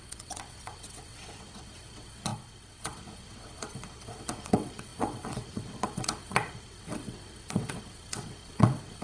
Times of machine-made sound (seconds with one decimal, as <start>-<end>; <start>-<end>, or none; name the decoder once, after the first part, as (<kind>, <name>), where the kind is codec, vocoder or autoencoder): 0.0-9.0 (vocoder, WaveNeXt)